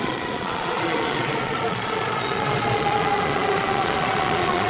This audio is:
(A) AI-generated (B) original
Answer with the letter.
A